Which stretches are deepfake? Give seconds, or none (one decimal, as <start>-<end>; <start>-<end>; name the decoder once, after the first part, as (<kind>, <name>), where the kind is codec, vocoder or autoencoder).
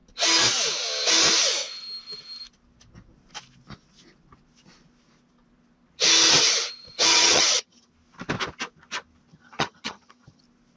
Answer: 7.1-7.9 (vocoder, HiFi-GAN); 9.3-10.4